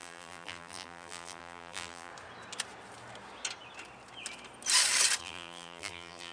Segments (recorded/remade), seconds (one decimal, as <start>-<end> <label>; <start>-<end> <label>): 0.0-2.1 remade; 2.1-5.2 recorded; 5.2-6.3 remade